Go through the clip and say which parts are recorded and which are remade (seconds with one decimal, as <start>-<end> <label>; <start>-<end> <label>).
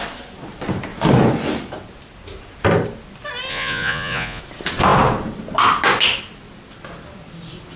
0.0-3.5 recorded; 3.5-4.4 remade; 4.4-7.8 recorded